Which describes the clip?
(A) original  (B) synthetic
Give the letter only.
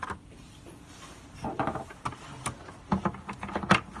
A